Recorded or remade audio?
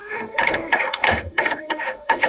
remade